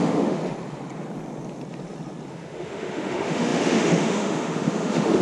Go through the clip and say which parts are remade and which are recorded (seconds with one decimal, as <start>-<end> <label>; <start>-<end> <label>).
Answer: 0.0-0.4 remade; 0.4-2.3 recorded; 2.3-5.2 remade